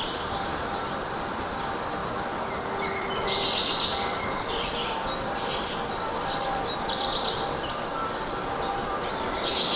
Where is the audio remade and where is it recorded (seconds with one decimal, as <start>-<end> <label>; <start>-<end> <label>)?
0.0-2.0 remade; 2.0-3.0 recorded; 3.0-9.8 remade